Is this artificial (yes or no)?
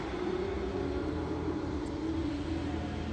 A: no